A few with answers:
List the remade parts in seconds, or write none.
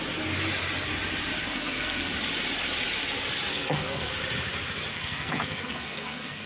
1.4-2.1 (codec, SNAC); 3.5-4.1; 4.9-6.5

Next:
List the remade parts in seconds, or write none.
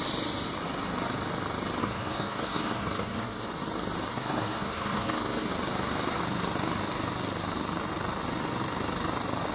1.8-3.5 (codec, SNAC); 4.1-5.5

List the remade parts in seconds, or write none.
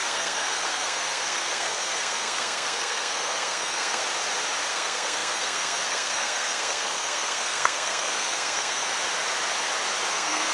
0.0-4.0 (codec, SNAC); 4.7-8.9; 10.1-10.5